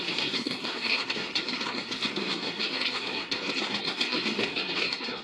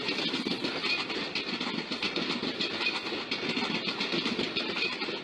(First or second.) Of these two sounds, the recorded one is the second